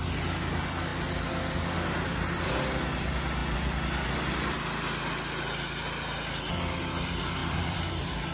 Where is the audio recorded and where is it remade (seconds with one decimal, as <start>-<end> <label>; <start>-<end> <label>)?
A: 0.0-7.4 recorded; 7.4-7.9 remade; 7.9-8.3 recorded